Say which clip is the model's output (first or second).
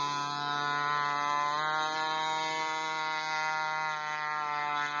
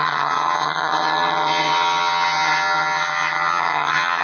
second